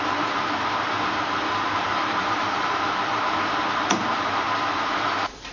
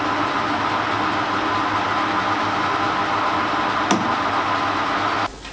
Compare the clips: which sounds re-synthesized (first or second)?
first